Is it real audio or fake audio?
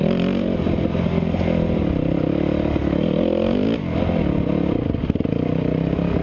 real